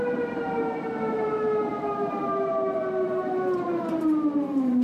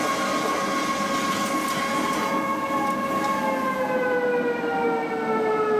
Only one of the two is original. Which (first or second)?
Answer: second